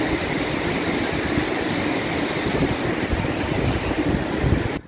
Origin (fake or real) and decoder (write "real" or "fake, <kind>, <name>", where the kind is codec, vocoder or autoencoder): real